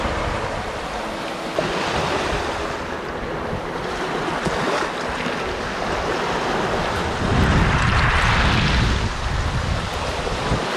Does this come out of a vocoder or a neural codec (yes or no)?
no